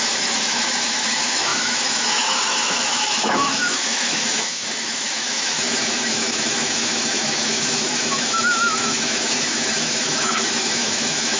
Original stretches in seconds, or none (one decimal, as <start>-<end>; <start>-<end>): none